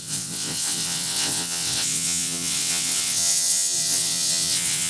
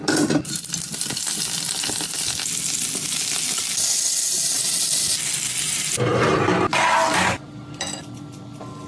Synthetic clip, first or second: first